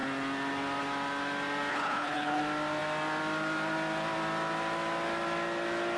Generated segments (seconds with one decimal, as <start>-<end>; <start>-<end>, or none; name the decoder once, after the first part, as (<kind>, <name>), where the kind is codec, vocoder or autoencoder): 1.7-2.4 (codec, HILCodec)